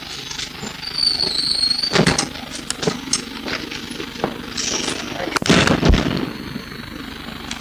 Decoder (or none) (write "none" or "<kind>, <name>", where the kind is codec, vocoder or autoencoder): none